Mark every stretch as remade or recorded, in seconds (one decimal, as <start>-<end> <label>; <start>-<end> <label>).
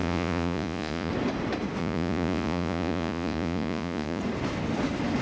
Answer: 0.0-1.1 remade; 1.1-1.8 recorded; 1.8-4.2 remade; 4.2-5.2 recorded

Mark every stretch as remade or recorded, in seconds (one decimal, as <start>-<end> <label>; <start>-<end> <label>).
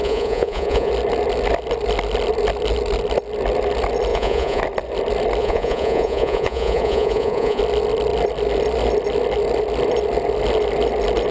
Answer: 0.0-0.9 remade; 0.9-4.1 recorded; 4.1-4.6 remade; 4.6-5.4 recorded; 5.4-7.6 remade; 7.6-11.3 recorded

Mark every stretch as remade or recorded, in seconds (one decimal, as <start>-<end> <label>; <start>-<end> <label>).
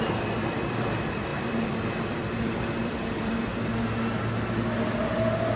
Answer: 0.0-3.5 remade; 3.5-5.6 recorded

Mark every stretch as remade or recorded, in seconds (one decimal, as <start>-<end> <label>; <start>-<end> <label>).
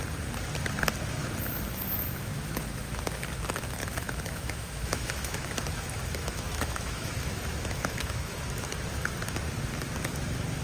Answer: 0.0-2.3 recorded; 2.3-3.2 remade; 3.2-3.8 recorded; 3.8-5.4 remade; 5.4-6.2 recorded; 6.2-8.4 remade; 8.4-10.6 recorded